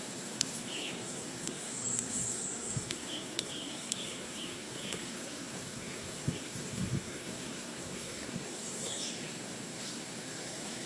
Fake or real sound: fake